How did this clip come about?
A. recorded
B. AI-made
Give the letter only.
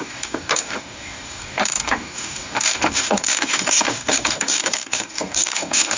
B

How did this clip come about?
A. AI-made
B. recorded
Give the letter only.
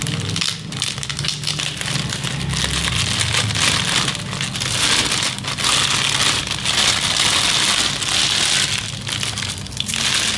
B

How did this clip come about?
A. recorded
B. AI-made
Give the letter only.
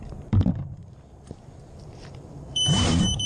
B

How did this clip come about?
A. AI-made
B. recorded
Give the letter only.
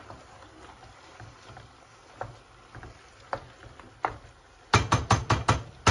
B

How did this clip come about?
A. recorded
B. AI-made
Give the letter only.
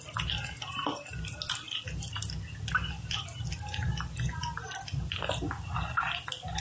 A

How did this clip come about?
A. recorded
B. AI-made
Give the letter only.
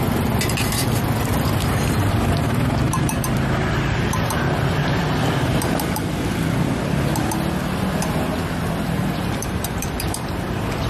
B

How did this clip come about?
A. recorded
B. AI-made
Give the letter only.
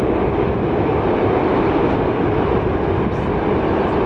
A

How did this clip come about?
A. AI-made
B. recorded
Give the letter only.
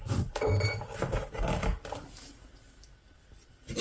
B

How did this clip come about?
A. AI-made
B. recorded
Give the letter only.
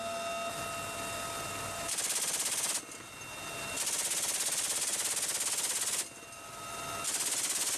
B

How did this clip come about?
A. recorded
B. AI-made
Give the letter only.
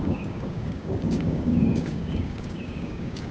B